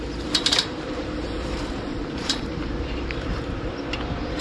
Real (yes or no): no